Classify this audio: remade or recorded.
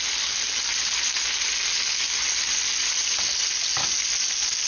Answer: recorded